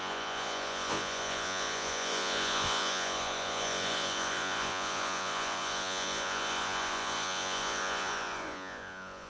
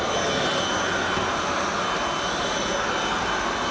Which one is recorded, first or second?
second